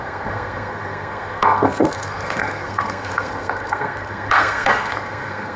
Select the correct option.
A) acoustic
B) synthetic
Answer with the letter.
B